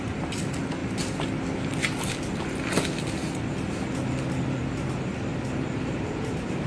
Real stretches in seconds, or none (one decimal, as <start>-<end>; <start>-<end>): 0.0-6.7